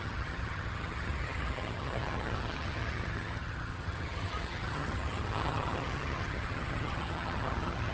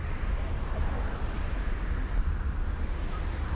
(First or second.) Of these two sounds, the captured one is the second